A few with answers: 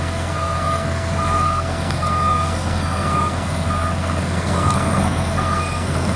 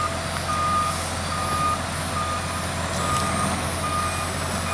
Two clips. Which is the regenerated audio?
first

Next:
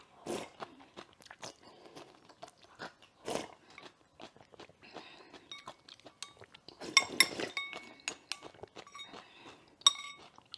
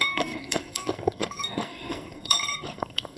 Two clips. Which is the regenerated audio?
second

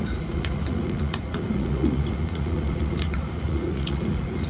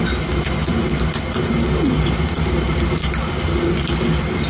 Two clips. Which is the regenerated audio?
first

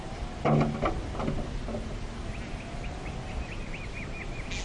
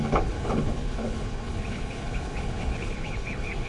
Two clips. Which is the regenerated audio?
second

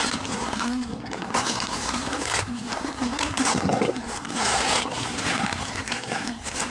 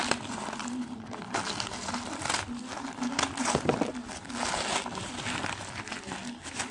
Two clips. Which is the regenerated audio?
first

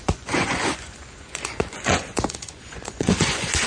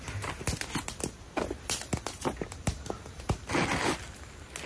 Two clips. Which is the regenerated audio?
first